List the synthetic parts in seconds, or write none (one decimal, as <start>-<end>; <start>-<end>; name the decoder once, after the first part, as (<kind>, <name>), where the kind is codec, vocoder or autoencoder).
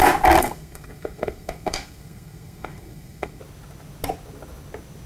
0.4-3.4 (codec, SNAC)